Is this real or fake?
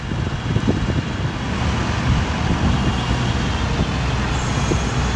real